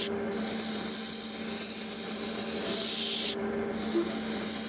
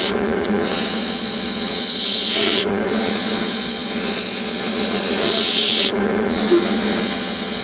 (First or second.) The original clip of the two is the first